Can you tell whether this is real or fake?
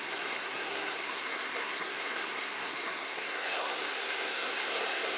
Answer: fake